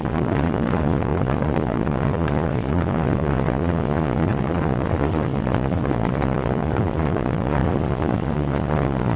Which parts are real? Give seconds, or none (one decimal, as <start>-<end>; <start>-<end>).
none